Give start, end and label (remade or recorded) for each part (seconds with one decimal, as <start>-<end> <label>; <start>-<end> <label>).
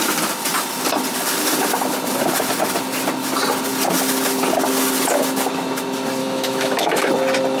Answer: 0.0-6.2 recorded; 6.2-7.1 remade; 7.1-7.6 recorded